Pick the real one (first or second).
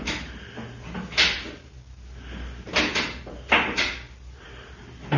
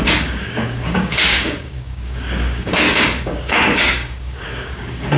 first